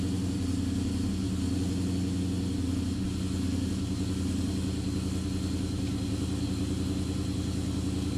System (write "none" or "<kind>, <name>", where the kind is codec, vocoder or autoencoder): none